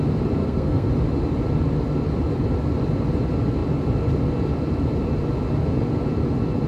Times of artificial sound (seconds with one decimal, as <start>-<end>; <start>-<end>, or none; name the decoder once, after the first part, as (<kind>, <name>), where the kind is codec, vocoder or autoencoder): 0.4-0.9 (codec, SNAC)